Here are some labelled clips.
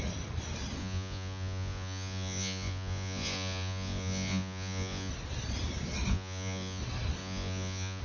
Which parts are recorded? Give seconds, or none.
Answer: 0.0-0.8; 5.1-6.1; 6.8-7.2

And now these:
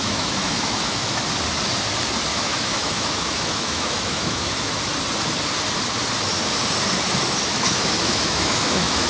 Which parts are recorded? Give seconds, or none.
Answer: 1.2-2.3; 4.7-7.5

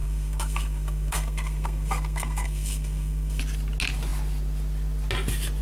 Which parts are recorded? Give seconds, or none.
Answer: 3.4-5.6

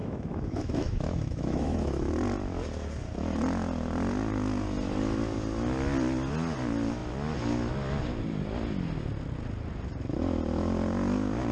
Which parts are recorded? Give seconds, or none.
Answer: 2.1-11.5

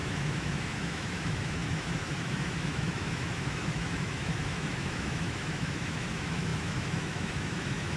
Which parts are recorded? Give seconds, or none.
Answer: none

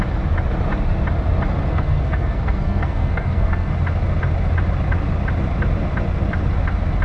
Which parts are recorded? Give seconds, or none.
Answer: 0.0-1.7; 3.7-7.0

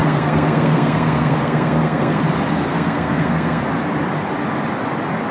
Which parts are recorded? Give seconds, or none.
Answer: 2.2-2.7; 3.6-5.3

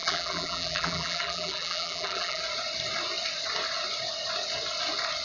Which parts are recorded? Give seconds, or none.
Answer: 2.4-5.2